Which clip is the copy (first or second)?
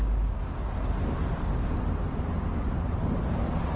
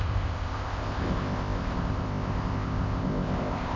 second